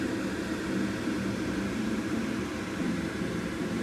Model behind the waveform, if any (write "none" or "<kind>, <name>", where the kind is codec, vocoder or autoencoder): vocoder, BigVGAN v2